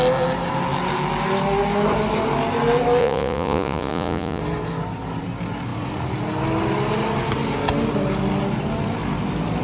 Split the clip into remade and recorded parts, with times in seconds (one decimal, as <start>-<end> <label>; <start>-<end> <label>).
0.0-3.0 recorded; 3.0-4.4 remade; 4.4-9.6 recorded